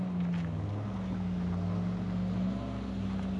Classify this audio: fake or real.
real